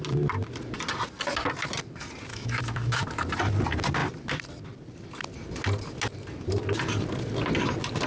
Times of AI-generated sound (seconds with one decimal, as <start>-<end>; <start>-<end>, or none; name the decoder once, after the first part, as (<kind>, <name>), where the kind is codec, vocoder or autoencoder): 2.3-3.0 (autoencoder, DAC-VAE)